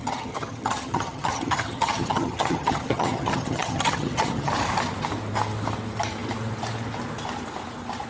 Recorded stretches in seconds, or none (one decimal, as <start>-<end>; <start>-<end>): 4.5-8.1